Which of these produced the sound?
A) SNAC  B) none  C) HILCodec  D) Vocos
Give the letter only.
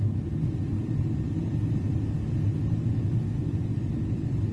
B